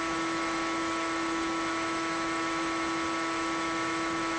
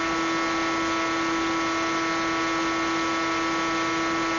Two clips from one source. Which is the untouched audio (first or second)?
second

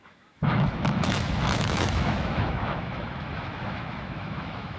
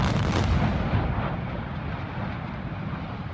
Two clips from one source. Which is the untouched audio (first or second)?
second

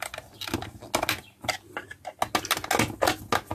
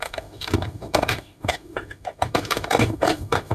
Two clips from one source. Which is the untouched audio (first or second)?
first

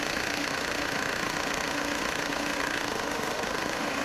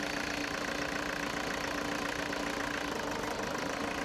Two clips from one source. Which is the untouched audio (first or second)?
second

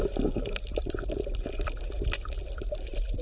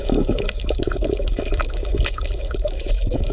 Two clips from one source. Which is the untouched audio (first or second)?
first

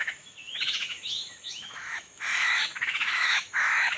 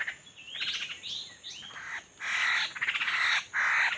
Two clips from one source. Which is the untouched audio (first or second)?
second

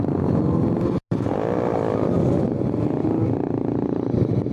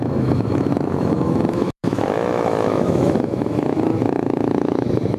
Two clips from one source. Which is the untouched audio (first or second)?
first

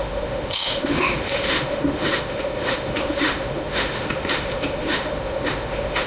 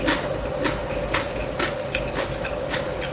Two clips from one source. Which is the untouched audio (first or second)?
second